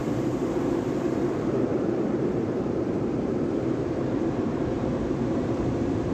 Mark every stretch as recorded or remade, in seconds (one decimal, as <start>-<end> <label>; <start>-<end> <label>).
0.0-1.1 recorded; 1.1-6.1 remade